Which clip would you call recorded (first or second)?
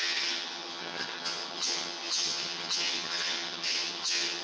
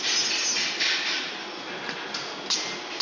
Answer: second